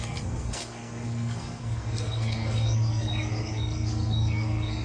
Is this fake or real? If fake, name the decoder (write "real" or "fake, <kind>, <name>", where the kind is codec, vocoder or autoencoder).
fake, codec, SNAC